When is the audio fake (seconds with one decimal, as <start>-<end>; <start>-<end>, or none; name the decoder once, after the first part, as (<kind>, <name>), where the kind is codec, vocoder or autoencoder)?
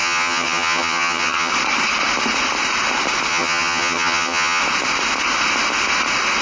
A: 0.0-1.5 (vocoder, HiFi-GAN); 3.3-4.6